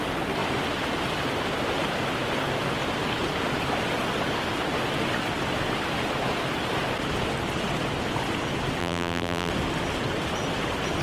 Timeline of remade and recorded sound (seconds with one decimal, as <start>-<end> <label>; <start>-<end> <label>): 0.0-8.8 recorded; 8.8-9.5 remade; 9.5-11.0 recorded

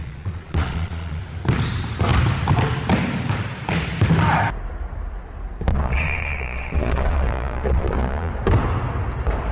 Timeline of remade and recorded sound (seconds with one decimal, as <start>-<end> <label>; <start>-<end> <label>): 0.0-1.2 remade; 1.2-5.7 recorded; 5.7-8.3 remade; 8.3-9.5 recorded